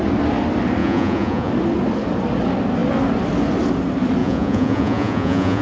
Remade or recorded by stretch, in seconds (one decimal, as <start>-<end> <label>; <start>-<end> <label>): 0.0-0.8 recorded; 0.8-1.5 remade; 1.5-4.2 recorded; 4.2-5.6 remade

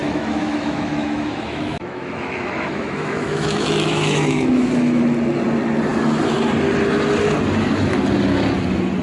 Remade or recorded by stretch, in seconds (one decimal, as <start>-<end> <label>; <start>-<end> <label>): 0.0-5.0 remade; 5.0-9.0 recorded

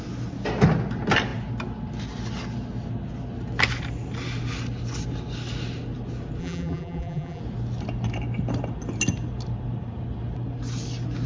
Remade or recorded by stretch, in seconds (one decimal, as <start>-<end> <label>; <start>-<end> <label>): 0.0-6.4 recorded; 6.4-7.4 remade; 7.4-11.3 recorded